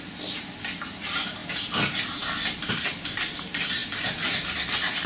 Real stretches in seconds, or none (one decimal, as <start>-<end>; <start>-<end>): 1.4-2.7